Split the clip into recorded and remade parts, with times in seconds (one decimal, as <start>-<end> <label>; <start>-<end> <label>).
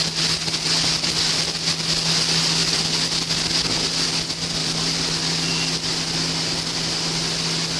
0.0-7.8 recorded